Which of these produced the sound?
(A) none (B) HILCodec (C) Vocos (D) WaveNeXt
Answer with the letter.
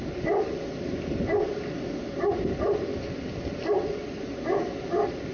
A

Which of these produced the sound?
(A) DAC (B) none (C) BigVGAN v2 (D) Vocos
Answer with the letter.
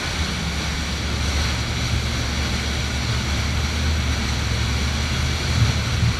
B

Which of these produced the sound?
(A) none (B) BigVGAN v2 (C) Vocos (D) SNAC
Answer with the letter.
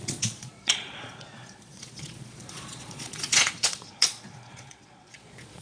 C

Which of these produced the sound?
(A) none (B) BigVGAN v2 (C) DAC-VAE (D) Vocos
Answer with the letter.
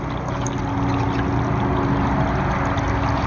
A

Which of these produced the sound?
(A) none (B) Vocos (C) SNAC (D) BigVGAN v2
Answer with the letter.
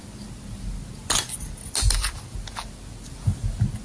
A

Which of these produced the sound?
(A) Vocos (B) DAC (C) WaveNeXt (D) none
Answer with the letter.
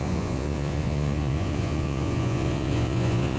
A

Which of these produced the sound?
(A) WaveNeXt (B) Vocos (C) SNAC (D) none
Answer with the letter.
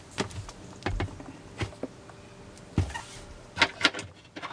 D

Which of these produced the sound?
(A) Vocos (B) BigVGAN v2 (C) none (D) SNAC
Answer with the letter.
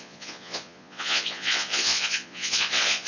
A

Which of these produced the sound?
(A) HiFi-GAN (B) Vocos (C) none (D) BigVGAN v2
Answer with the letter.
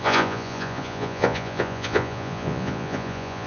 B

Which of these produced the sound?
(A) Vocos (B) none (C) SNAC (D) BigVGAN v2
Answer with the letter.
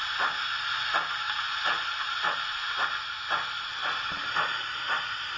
B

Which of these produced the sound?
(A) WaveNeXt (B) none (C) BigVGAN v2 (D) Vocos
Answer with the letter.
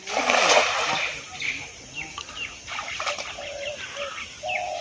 B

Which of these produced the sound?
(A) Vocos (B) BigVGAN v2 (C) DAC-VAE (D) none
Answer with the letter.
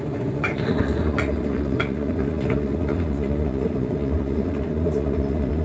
A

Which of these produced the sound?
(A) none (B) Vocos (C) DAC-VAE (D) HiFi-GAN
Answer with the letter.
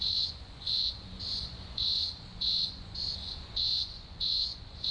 B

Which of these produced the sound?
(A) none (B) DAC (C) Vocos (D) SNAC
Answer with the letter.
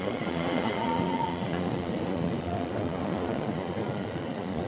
C